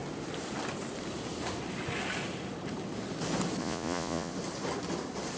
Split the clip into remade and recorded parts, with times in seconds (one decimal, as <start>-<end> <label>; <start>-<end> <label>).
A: 0.0-3.6 recorded; 3.6-4.3 remade; 4.3-5.4 recorded